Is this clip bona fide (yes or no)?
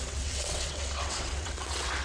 no